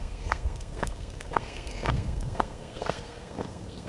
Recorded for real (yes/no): no